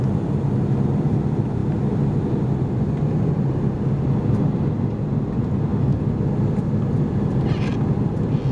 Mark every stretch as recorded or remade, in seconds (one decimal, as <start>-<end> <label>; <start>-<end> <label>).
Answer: 0.0-8.5 recorded